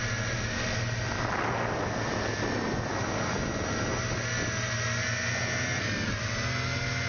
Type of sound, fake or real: real